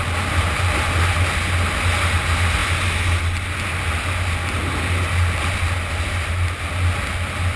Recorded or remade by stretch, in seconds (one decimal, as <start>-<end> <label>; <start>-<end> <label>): 0.0-7.6 recorded